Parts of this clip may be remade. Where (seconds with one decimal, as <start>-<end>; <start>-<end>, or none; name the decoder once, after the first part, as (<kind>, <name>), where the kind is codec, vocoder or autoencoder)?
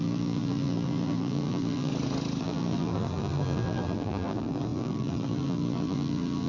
0.0-1.9 (vocoder, BigVGAN v2); 2.4-6.5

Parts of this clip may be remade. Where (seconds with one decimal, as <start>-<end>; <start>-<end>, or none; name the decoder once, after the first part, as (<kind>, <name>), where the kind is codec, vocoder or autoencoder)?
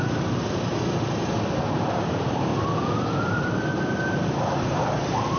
0.0-0.7 (vocoder, BigVGAN v2); 1.6-2.5; 3.0-5.4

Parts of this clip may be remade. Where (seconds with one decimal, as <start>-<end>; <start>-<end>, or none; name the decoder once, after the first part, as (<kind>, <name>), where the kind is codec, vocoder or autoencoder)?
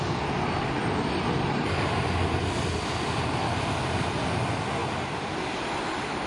0.8-4.3 (vocoder, BigVGAN v2)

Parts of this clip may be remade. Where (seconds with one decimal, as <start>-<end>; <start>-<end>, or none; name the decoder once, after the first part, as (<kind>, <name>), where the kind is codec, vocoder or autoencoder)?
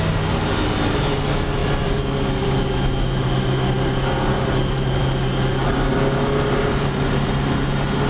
none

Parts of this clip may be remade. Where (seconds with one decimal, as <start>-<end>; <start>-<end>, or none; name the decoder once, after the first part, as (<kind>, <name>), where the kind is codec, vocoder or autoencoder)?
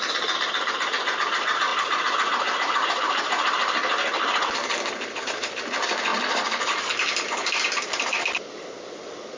0.0-1.7 (vocoder, BigVGAN v2); 5.2-9.4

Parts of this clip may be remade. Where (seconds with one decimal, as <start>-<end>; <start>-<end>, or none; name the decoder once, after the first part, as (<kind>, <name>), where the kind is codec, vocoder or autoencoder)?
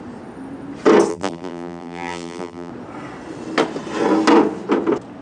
1.1-2.7 (vocoder, BigVGAN v2)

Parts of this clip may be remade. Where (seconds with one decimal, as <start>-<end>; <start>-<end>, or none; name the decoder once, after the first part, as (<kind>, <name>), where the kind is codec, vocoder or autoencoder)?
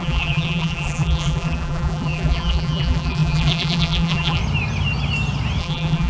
0.0-4.4 (vocoder, BigVGAN v2); 5.6-6.1